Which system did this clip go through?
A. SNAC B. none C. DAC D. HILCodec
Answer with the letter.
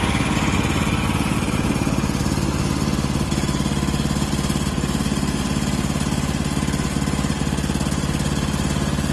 B